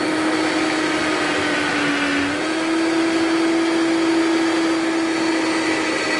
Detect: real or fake real